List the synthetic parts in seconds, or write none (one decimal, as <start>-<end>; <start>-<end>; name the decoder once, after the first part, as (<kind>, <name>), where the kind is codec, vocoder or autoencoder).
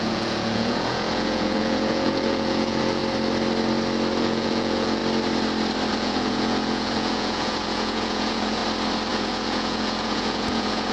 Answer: 0.0-3.0 (vocoder, Vocos); 4.2-5.0; 5.9-8.6; 9.1-10.9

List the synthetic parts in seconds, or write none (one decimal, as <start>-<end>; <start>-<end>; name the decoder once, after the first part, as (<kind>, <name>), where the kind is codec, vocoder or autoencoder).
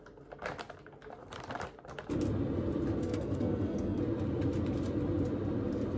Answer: 3.0-4.0 (codec, SNAC)